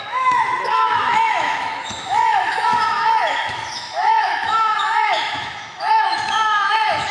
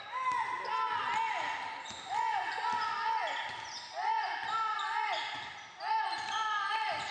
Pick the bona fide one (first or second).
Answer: second